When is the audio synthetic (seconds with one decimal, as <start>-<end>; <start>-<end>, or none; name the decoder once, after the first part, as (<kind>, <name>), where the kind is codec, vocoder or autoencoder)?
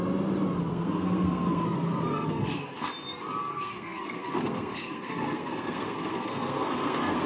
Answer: 0.7-2.9 (codec, SNAC); 3.5-7.3